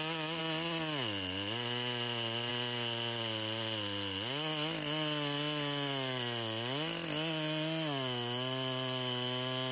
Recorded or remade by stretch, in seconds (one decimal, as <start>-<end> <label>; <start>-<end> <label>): 0.0-9.7 recorded